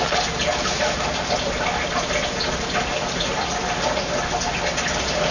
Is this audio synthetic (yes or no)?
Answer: no